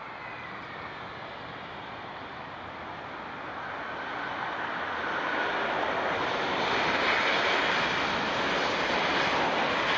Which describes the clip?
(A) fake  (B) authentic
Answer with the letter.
B